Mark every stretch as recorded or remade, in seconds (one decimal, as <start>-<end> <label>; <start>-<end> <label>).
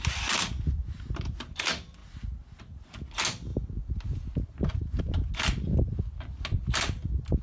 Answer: 0.0-7.4 recorded